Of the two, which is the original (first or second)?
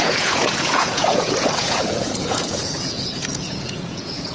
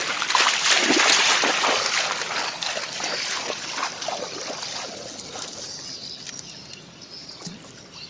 second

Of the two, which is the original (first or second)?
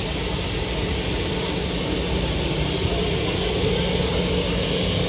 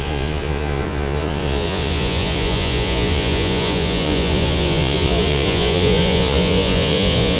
first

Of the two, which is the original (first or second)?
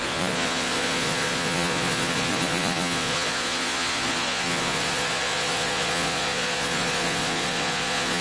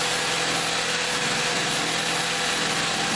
second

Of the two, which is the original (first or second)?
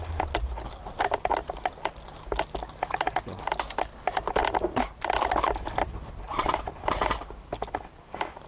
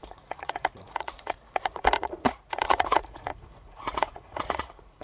first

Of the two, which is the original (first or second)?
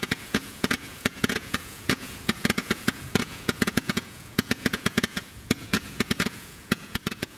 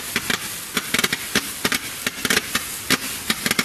second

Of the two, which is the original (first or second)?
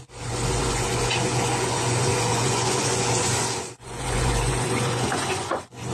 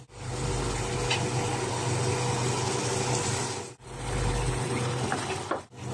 second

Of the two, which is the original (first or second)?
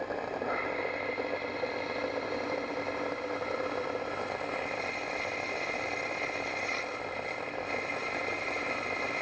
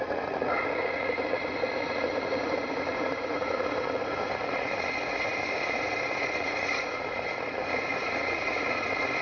first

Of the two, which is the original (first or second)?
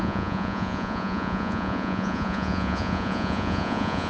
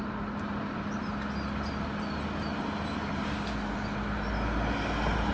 second